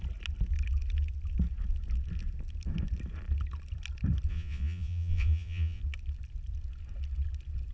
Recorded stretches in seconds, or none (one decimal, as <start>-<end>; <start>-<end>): 0.0-4.3; 5.8-7.7

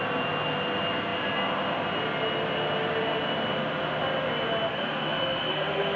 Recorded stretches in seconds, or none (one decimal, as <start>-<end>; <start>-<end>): 0.0-4.7

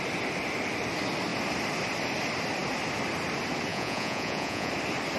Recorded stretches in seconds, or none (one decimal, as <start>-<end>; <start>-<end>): 0.0-3.7; 4.7-5.2

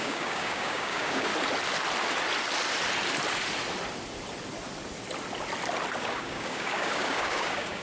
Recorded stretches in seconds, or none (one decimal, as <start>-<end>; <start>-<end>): 1.3-6.0

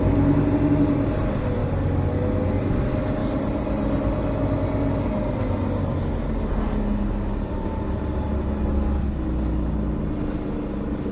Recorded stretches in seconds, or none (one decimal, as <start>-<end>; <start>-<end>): 0.0-11.1

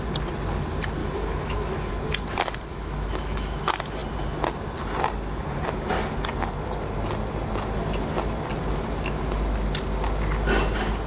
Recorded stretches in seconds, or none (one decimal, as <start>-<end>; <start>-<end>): 0.0-1.0; 1.9-2.7; 3.6-11.1